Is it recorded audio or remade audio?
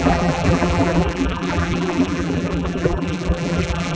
remade